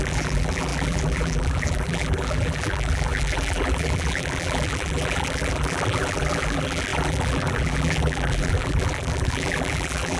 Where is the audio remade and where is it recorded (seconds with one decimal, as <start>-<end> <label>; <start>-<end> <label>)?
0.0-10.2 remade